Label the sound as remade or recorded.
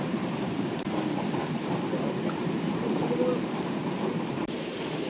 remade